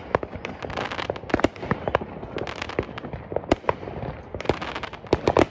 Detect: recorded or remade recorded